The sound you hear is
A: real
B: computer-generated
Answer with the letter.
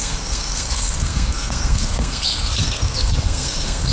B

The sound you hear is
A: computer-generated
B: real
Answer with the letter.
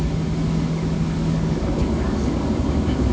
A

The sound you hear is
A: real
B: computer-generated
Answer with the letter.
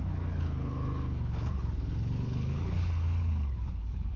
B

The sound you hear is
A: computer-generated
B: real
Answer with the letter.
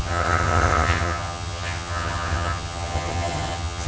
A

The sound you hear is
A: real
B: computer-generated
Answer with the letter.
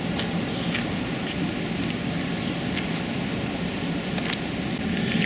A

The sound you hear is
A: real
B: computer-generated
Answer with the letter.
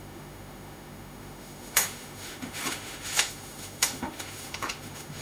B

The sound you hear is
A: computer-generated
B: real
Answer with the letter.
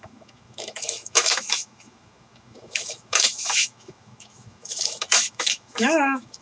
A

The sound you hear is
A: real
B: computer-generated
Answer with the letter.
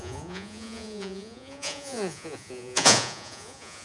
B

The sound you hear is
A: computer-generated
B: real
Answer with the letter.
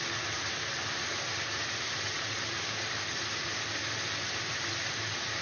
B